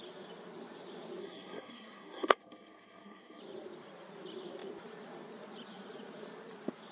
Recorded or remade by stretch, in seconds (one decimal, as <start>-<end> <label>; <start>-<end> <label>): 0.0-1.2 recorded; 1.2-3.4 remade; 3.4-6.9 recorded